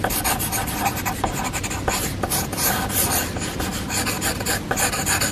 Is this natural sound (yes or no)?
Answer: yes